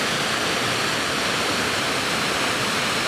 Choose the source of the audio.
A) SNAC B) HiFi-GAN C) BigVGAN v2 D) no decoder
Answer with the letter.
D